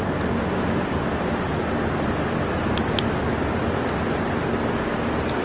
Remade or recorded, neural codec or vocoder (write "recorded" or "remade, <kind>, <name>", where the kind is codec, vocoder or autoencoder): recorded